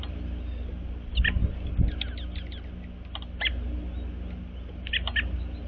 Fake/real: real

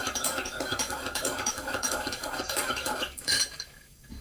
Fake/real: fake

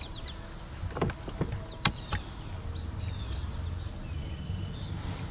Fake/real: real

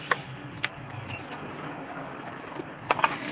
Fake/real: fake